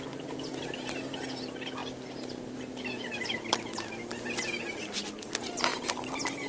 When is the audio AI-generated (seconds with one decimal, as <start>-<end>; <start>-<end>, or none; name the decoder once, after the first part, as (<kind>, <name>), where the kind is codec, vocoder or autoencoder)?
5.7-6.5 (vocoder, BigVGAN v2)